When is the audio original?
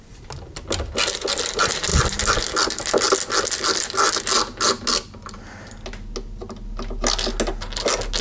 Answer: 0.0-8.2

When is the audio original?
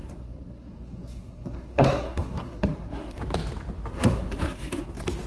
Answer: 3.2-3.9; 4.8-5.3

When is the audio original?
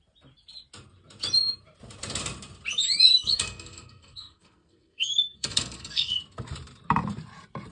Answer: 0.0-3.1; 6.2-7.7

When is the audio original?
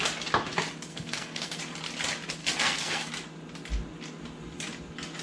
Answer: 0.0-0.9; 1.6-2.4; 3.1-5.2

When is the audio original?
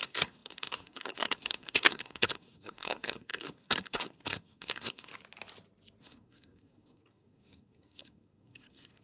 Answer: 5.1-6.0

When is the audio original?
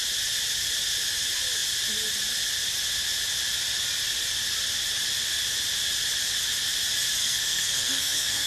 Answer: 0.0-7.2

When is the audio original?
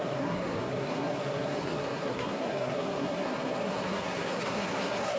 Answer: none